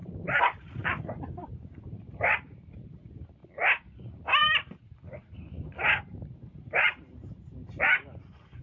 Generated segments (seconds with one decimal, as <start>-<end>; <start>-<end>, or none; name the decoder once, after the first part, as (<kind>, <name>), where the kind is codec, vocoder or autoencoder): 0.0-3.4 (vocoder, BigVGAN v2); 4.0-4.4; 6.0-8.6